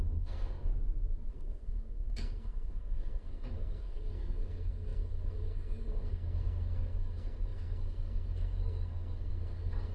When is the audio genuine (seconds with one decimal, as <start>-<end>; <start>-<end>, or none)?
0.7-1.3